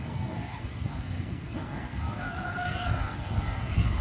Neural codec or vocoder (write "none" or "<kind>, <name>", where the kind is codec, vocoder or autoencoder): codec, SNAC